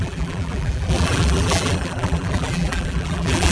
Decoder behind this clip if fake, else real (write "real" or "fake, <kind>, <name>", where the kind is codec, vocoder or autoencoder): fake, vocoder, BigVGAN v2